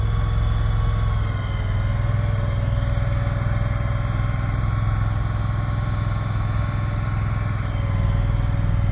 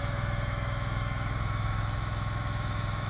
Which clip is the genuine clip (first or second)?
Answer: first